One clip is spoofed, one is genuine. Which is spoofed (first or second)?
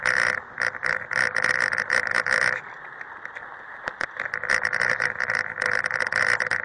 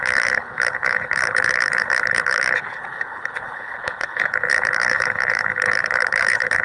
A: second